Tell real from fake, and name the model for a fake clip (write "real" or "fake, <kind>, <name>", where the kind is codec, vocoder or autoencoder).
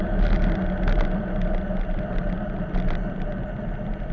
real